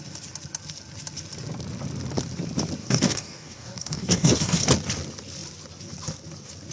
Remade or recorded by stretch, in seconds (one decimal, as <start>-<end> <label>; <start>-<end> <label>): 0.0-2.8 recorded; 2.8-4.6 remade; 4.6-6.7 recorded

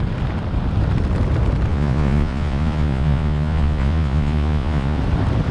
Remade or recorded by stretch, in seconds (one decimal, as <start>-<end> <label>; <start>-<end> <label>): 0.0-1.7 recorded; 1.7-5.0 remade; 5.0-5.5 recorded

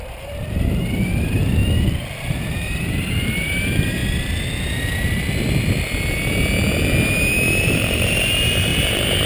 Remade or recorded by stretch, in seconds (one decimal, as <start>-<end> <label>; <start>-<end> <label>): 0.0-1.6 remade; 1.6-2.2 recorded; 2.2-4.0 remade; 4.0-7.6 recorded; 7.6-9.3 remade